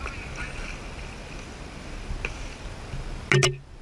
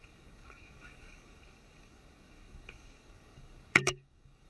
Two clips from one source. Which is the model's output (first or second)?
second